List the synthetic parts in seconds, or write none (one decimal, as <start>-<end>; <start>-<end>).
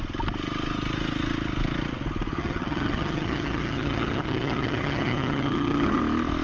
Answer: 2.4-6.0